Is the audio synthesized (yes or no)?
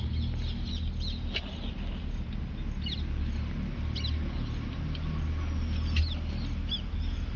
no